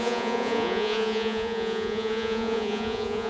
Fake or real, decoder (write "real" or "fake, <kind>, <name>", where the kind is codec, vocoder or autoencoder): fake, vocoder, Vocos